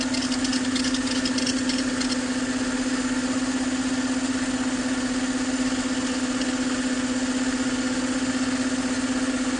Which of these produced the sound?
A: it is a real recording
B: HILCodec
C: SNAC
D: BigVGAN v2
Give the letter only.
A